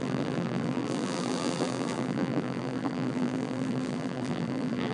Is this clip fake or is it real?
fake